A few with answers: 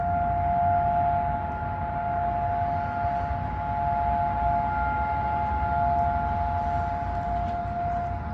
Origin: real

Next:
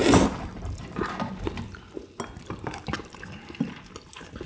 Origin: real